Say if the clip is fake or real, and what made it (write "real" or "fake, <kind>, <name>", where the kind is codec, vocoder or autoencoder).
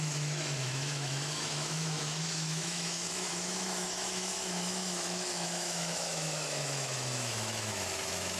fake, autoencoder, DAC-VAE